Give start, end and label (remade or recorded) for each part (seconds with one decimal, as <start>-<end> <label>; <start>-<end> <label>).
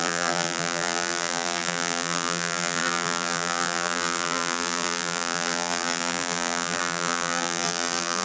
0.0-8.2 remade